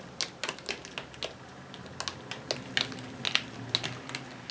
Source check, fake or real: real